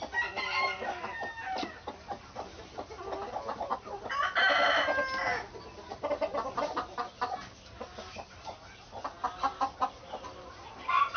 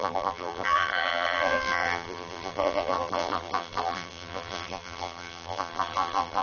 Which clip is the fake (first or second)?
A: second